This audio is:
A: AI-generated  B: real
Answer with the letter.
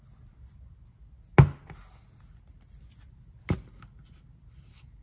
B